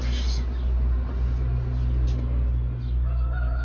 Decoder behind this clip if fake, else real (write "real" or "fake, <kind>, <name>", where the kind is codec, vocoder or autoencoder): real